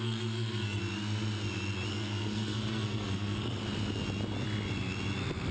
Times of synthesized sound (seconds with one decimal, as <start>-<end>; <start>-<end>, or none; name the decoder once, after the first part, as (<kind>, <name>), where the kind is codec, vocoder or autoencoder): 0.0-0.8 (codec, SNAC); 1.9-3.6